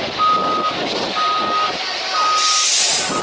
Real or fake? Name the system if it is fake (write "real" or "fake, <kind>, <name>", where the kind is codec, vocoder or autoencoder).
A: real